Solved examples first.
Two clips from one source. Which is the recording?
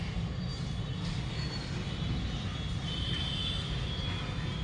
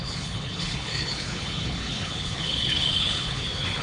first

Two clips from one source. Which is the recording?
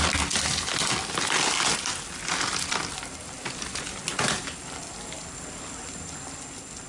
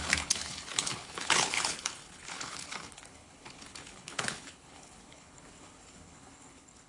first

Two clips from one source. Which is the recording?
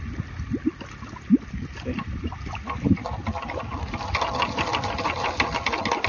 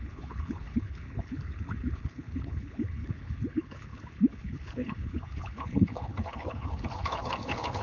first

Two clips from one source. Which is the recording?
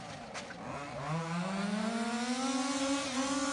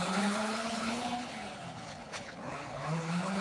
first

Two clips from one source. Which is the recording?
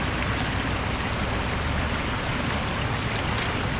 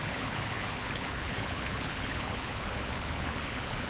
first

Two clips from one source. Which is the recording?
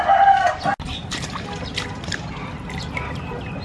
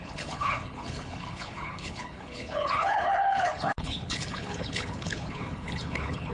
first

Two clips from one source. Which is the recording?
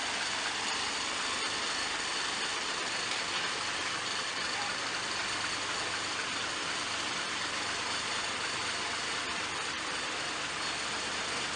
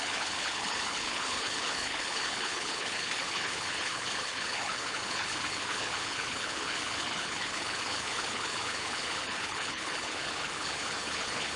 first